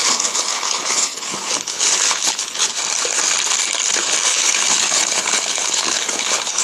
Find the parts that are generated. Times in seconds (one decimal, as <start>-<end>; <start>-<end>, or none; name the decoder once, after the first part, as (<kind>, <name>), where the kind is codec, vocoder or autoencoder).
0.0-2.7 (codec, HILCodec); 4.2-6.6